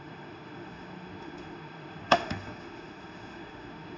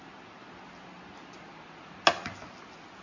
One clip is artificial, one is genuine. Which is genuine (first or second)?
second